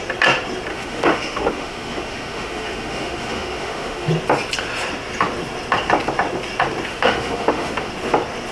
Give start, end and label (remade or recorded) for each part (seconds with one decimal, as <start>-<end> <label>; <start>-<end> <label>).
0.0-0.7 recorded; 0.7-4.1 remade; 4.1-6.9 recorded; 6.9-7.9 remade; 7.9-8.5 recorded